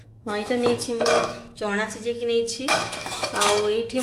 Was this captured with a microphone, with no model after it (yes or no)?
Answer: no